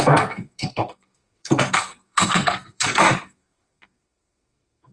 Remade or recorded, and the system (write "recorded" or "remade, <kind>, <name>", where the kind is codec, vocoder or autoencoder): remade, codec, SNAC